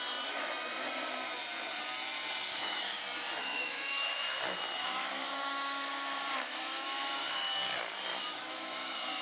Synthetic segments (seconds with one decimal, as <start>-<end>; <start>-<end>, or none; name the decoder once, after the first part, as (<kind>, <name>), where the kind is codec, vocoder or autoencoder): 2.5-3.0 (autoencoder, DAC-VAE); 3.4-7.5; 8.1-9.2